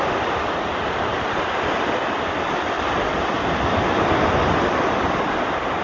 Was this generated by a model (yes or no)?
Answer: no